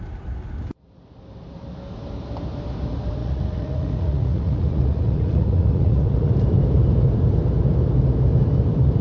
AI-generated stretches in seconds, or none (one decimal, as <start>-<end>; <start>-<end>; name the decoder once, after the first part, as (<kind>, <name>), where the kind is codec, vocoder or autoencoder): 3.2-6.3 (vocoder, Vocos)